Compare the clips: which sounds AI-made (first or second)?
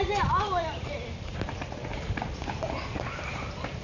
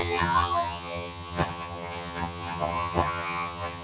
second